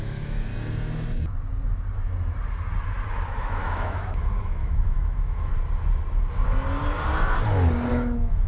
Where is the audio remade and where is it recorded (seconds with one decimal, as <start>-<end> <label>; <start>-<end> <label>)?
0.0-0.5 remade; 0.5-3.1 recorded; 3.1-5.5 remade; 5.5-7.9 recorded; 7.9-8.5 remade